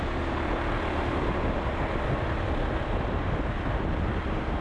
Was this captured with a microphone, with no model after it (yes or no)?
yes